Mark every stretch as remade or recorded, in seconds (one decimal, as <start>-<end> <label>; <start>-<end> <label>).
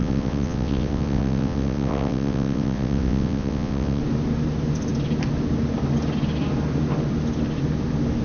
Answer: 0.0-4.0 remade; 4.0-8.2 recorded